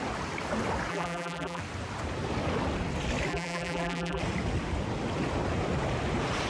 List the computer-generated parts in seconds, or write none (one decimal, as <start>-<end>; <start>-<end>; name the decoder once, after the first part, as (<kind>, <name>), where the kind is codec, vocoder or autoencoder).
0.9-1.6 (vocoder, BigVGAN v2); 3.3-4.2